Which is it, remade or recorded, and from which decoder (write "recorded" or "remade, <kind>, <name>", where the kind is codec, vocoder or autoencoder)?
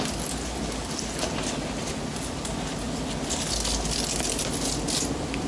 recorded